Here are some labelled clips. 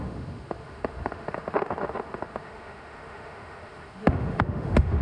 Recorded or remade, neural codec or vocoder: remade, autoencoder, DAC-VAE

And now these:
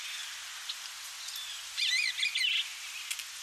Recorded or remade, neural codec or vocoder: recorded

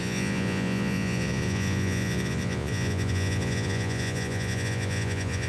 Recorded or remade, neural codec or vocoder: remade, vocoder, Vocos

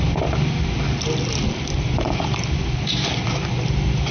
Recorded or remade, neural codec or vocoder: recorded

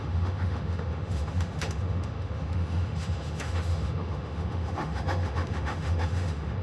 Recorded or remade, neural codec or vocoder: remade, autoencoder, DAC-VAE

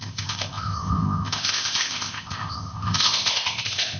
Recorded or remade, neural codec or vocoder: remade, codec, ZipCodec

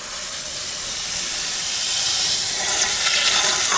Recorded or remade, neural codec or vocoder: remade, vocoder, BigVGAN v2